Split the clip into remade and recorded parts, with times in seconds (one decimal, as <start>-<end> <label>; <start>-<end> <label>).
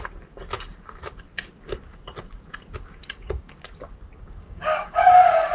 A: 0.0-3.0 recorded; 3.0-3.5 remade; 3.5-4.2 recorded; 4.2-5.5 remade